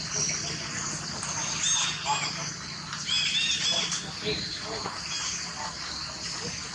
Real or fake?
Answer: real